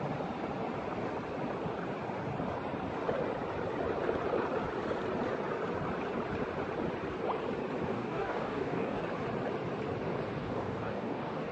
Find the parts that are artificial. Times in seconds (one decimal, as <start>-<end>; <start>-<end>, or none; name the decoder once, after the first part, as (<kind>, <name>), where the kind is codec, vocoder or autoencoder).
7.9-9.0 (codec, DAC); 10.4-11.5